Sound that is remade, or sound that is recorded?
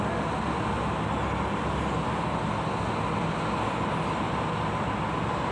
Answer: recorded